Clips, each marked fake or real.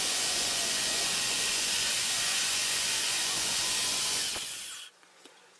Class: fake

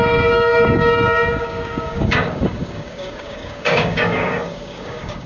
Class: fake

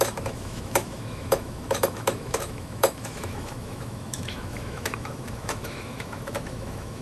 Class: fake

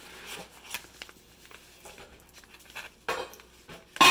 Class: real